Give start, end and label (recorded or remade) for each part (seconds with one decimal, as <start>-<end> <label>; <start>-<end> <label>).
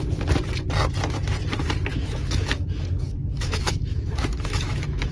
0.0-1.9 recorded; 1.9-5.1 remade